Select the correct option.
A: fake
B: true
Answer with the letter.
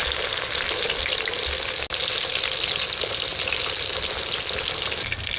B